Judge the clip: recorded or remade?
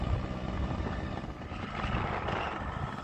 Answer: recorded